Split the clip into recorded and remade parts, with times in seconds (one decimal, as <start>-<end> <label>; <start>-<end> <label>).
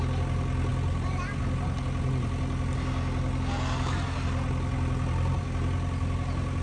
0.0-6.6 recorded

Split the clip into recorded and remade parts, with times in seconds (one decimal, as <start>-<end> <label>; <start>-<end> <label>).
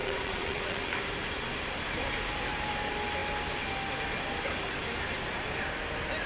0.0-0.9 remade; 0.9-6.3 recorded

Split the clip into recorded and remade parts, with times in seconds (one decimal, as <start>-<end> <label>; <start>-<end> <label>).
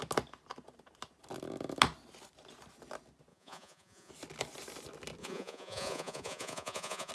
0.0-3.3 recorded; 3.3-4.1 remade; 4.1-5.2 recorded; 5.2-7.1 remade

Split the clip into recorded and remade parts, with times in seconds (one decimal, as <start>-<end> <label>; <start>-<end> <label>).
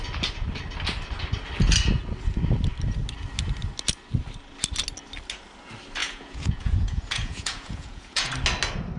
0.0-6.0 recorded; 6.0-8.3 remade; 8.3-9.0 recorded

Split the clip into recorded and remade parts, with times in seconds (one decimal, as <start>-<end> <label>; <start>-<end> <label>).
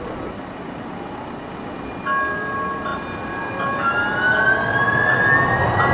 0.0-5.9 recorded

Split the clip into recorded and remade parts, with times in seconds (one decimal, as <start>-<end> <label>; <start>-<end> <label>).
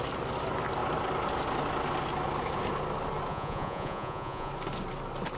0.0-3.3 recorded; 3.3-4.5 remade; 4.5-5.4 recorded